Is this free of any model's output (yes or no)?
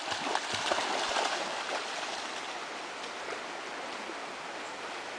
yes